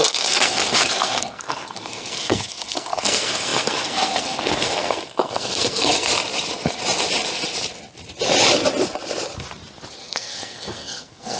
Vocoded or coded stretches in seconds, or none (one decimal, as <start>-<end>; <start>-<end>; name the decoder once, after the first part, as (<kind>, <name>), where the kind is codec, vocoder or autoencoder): 0.0-6.1 (codec, SNAC); 10.0-11.4